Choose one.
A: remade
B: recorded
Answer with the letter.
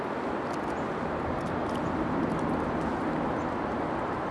B